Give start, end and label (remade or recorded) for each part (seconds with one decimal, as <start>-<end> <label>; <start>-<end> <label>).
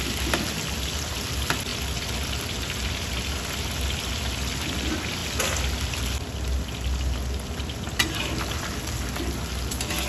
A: 0.0-10.1 recorded